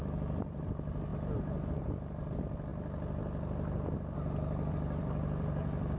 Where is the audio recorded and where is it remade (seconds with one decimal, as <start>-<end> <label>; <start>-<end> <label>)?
0.0-1.1 remade; 1.1-1.7 recorded; 1.7-2.7 remade; 2.7-4.7 recorded; 4.7-6.0 remade